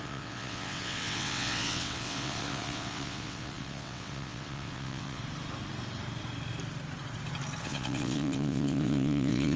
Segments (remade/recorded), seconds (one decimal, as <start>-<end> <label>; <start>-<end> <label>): 0.0-5.2 remade; 5.2-7.6 recorded; 7.6-9.6 remade